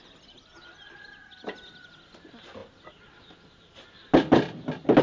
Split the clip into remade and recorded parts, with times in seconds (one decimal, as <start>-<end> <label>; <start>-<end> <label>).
0.0-5.0 recorded